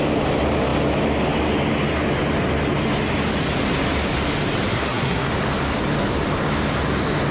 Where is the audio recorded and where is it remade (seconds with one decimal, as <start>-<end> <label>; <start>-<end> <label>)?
0.0-4.7 recorded; 4.7-5.3 remade; 5.3-7.3 recorded